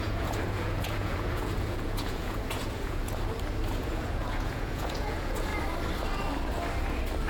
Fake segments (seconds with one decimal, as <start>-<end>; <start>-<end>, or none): 0.0-3.0; 3.7-5.5

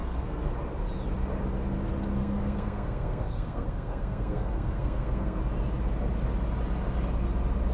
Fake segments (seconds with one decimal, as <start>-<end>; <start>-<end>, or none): 0.0-0.5; 2.2-5.4

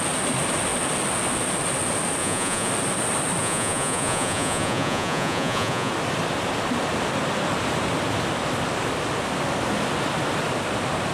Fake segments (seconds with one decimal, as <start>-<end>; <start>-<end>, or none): 2.2-2.7; 3.4-5.9

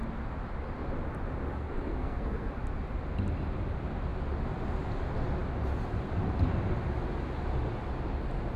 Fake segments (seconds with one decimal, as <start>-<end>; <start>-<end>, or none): 1.5-2.6

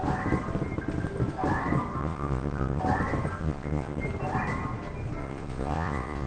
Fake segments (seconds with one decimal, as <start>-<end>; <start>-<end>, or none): 2.0-2.8; 3.4-4.0; 5.2-6.3